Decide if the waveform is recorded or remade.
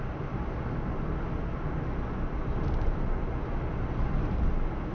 recorded